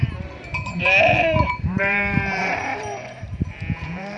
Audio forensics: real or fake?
fake